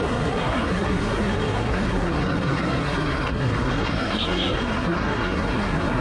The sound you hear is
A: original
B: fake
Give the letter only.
B